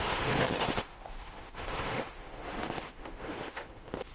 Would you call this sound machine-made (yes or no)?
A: yes